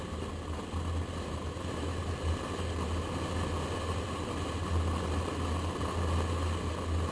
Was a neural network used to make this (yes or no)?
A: no